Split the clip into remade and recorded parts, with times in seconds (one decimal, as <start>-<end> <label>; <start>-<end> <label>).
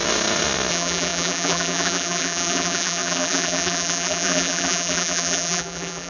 0.0-0.7 recorded; 0.7-6.1 remade